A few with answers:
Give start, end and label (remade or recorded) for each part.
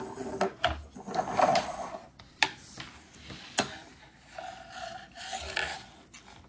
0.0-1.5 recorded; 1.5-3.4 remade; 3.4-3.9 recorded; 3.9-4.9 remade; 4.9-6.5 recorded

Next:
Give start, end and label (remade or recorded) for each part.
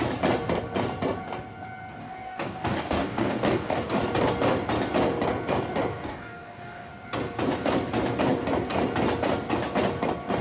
0.0-2.0 recorded; 2.0-3.9 remade; 3.9-5.9 recorded; 5.9-6.9 remade; 6.9-10.4 recorded